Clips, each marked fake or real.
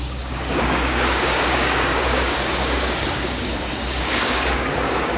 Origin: fake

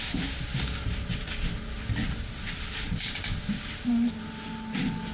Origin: real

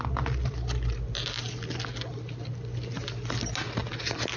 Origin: real